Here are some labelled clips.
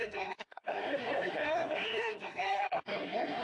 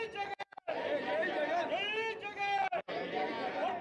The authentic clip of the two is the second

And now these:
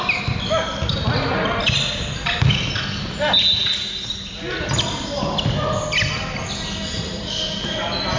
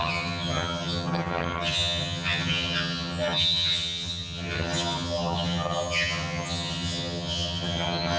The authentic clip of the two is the first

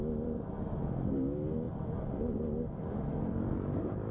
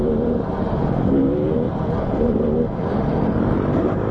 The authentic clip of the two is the first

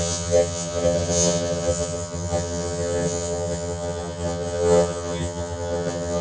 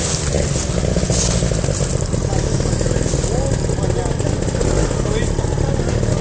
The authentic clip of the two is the second